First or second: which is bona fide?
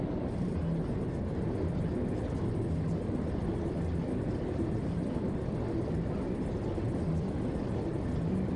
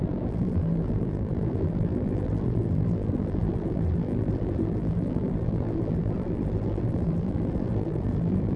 first